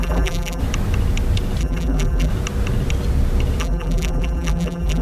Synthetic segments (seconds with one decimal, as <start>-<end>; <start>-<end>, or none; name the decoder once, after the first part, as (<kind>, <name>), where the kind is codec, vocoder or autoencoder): 0.0-0.6 (vocoder, BigVGAN v2); 1.6-2.3; 3.6-5.0